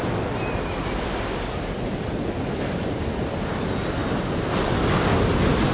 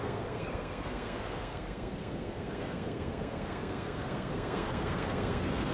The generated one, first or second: second